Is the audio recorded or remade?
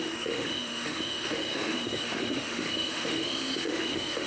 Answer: remade